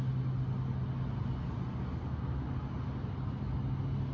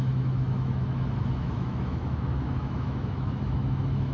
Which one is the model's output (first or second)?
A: second